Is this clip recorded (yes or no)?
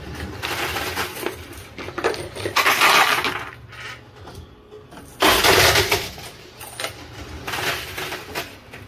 yes